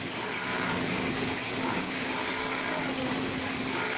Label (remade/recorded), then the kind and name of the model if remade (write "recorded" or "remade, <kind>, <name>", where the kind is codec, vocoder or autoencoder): remade, codec, DAC